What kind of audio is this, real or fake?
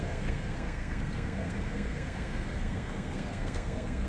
fake